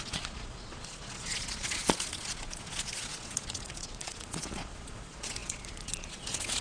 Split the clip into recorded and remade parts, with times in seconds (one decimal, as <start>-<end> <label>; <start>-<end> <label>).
0.0-6.6 remade